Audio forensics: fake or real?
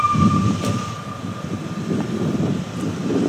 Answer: fake